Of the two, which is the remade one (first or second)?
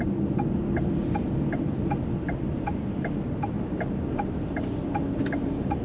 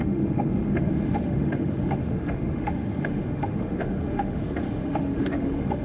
second